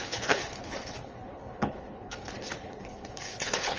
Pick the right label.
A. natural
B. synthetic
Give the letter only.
B